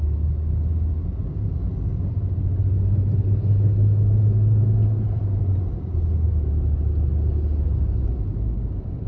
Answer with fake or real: real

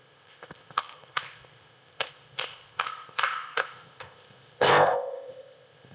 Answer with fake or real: fake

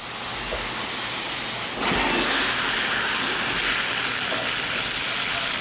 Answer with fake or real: real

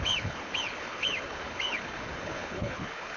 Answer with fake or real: fake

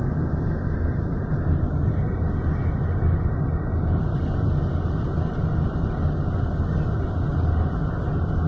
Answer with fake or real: real